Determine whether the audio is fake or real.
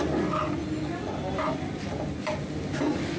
real